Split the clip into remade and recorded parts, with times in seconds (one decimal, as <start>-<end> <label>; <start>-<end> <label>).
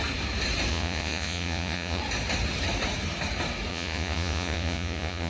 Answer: 0.0-0.7 recorded; 0.7-2.0 remade; 2.0-3.7 recorded; 3.7-5.3 remade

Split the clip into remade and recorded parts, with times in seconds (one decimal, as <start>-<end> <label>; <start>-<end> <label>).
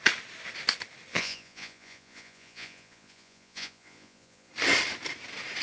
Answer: 0.0-1.1 recorded; 1.1-4.5 remade; 4.5-5.6 recorded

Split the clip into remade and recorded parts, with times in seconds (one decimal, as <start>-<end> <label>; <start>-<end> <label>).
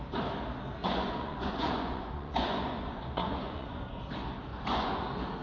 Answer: 0.0-0.8 recorded; 0.8-4.0 remade; 4.0-4.5 recorded; 4.5-5.0 remade; 5.0-5.4 recorded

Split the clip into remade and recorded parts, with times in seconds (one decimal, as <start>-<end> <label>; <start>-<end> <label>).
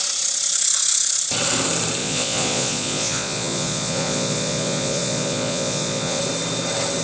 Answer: 0.0-2.0 recorded; 2.0-6.2 remade; 6.2-7.0 recorded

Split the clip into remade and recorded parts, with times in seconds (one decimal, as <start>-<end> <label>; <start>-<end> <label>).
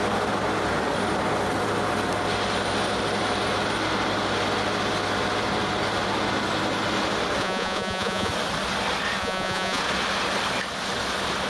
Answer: 0.0-7.4 recorded; 7.4-8.3 remade; 8.3-9.2 recorded; 9.2-9.8 remade; 9.8-11.5 recorded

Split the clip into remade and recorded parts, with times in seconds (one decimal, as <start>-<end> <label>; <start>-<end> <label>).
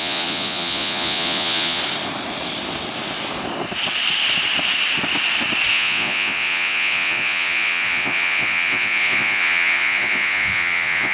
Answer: 0.0-1.8 remade; 1.8-5.7 recorded; 5.7-11.1 remade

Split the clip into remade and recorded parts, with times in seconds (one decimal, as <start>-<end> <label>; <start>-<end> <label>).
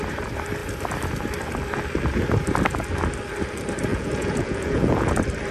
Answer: 0.0-3.9 recorded; 3.9-5.1 remade; 5.1-5.5 recorded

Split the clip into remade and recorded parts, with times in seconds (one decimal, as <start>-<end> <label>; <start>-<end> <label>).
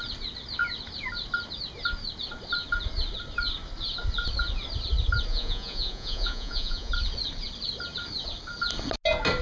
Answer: 0.0-5.3 recorded; 5.3-6.9 remade; 6.9-9.4 recorded